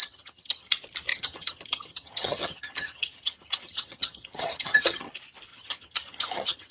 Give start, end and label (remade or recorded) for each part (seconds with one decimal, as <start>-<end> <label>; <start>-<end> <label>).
0.0-0.7 remade; 0.7-1.1 recorded; 1.1-5.1 remade; 5.1-5.5 recorded; 5.5-6.7 remade